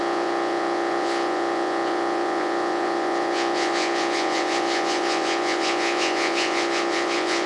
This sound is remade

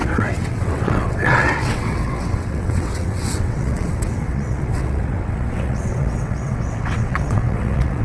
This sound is remade